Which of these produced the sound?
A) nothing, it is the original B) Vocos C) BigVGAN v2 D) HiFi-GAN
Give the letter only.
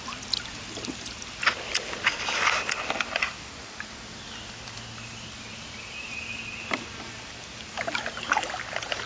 A